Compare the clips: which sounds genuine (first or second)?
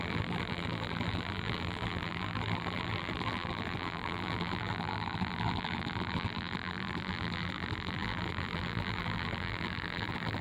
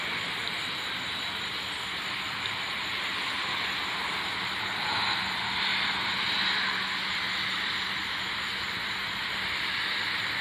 second